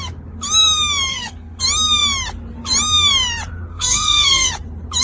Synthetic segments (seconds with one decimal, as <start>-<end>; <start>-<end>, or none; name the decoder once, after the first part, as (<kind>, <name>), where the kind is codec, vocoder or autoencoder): 1.1-1.6 (codec, SNAC); 3.7-4.5